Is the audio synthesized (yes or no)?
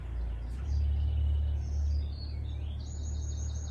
no